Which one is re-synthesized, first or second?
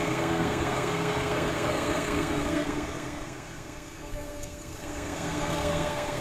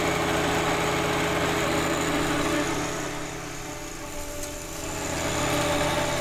first